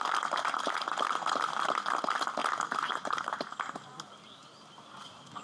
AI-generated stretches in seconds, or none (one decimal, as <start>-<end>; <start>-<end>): none